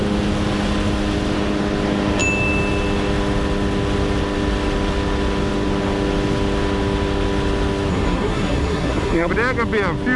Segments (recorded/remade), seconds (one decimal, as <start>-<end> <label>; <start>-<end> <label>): 0.0-7.9 recorded; 7.9-9.3 remade; 9.3-10.2 recorded

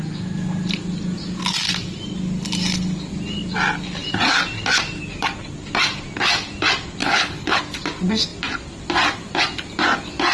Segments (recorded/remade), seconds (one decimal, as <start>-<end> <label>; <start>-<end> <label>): 0.0-7.0 recorded; 7.0-7.6 remade; 7.6-10.3 recorded

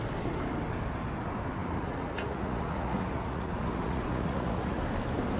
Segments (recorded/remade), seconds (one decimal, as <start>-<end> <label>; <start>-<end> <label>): 0.0-1.6 recorded; 1.6-4.8 remade; 4.8-5.4 recorded

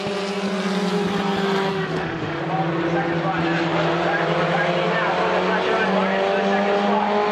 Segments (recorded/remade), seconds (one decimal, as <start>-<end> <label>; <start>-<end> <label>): 0.0-1.7 recorded; 1.7-2.4 remade; 2.4-7.3 recorded